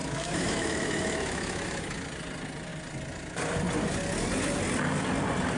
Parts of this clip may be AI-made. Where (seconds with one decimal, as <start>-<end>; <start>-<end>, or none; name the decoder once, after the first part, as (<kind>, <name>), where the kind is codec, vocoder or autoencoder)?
0.0-1.9 (autoencoder, DAC-VAE)